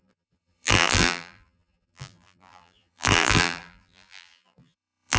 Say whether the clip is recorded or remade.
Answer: remade